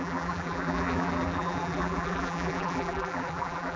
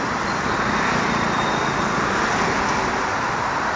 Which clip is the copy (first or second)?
first